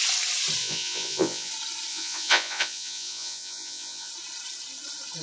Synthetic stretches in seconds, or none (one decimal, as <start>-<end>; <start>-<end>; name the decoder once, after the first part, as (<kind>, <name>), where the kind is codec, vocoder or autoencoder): 0.6-1.5 (vocoder, Vocos); 1.9-4.1